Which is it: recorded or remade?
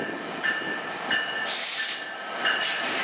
recorded